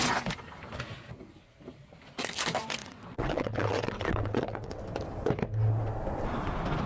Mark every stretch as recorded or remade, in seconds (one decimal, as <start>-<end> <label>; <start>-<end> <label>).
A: 0.0-2.8 recorded; 2.8-4.8 remade; 4.8-6.9 recorded